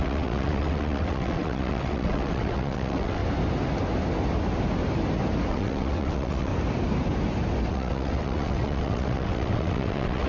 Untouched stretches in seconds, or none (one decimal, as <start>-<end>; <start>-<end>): 3.2-5.5; 6.5-7.7